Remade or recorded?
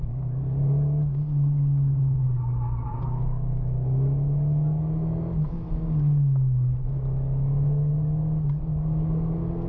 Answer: recorded